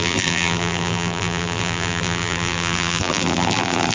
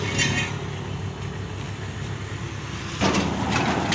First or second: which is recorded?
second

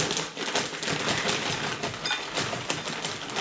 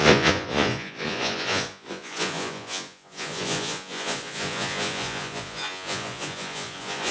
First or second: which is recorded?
first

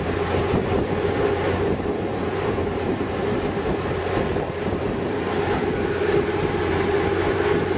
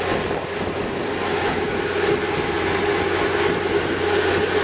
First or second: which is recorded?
second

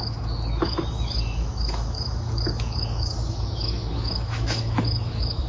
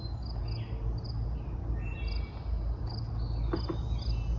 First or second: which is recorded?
second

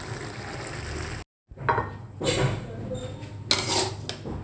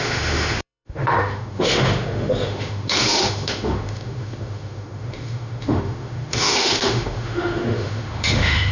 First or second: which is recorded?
first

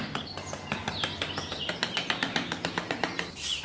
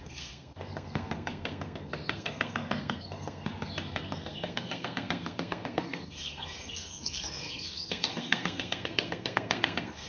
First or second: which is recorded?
first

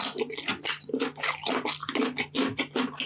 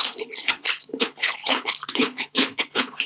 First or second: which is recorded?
first